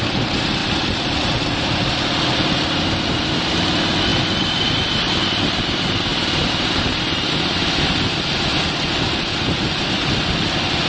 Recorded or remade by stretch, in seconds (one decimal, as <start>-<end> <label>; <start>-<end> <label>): 0.0-0.6 recorded; 0.6-2.0 remade; 2.0-6.1 recorded; 6.1-7.0 remade; 7.0-10.9 recorded